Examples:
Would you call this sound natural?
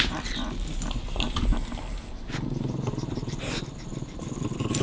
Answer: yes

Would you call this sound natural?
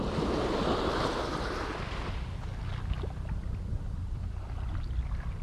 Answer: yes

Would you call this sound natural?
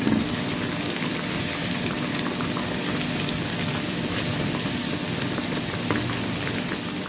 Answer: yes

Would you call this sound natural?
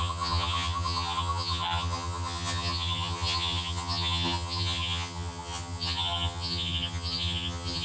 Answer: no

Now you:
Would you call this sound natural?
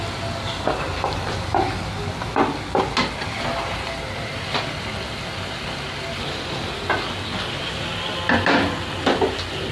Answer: yes